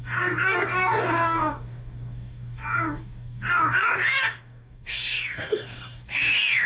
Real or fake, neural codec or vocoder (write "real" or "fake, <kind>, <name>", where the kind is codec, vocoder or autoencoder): fake, codec, DAC